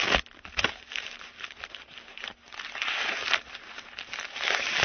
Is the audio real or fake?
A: real